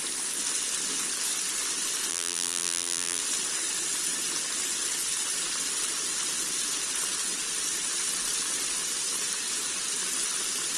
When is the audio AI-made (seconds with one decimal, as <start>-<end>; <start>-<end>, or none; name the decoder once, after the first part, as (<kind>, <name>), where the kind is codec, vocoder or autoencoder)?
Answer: 2.1-3.2 (vocoder, BigVGAN v2)